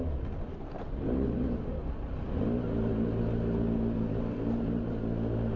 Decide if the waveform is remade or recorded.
recorded